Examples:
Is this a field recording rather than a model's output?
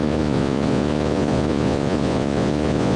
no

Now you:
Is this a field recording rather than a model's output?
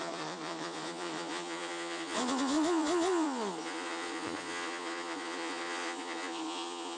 no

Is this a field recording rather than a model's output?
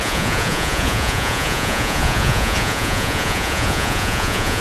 no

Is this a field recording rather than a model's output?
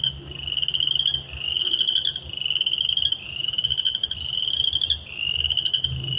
yes